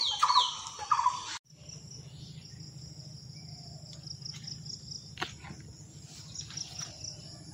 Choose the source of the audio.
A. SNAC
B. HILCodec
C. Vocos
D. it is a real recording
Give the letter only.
D